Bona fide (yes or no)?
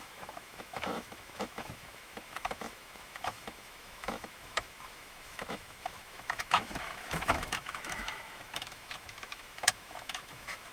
no